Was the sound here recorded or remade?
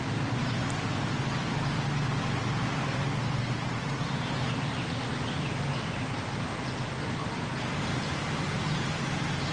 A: recorded